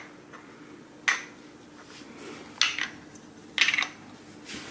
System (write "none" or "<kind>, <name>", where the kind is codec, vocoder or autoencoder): none